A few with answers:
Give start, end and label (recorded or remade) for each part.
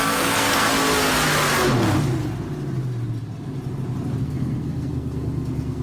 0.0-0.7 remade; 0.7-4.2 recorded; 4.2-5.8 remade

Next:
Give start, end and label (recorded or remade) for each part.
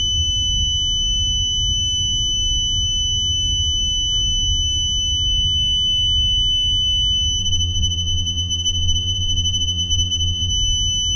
0.0-7.4 recorded; 7.4-10.5 remade; 10.5-11.2 recorded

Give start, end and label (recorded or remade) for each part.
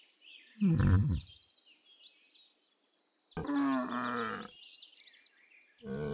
0.0-6.1 recorded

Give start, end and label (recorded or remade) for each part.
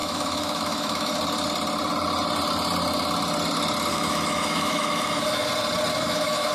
0.0-1.1 remade; 1.1-3.9 recorded; 3.9-5.5 remade; 5.5-5.9 recorded; 5.9-6.5 remade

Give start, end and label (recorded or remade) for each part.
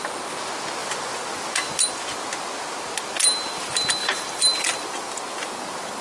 0.0-0.8 recorded; 0.8-1.7 remade; 1.7-4.0 recorded; 4.0-5.2 remade; 5.2-6.0 recorded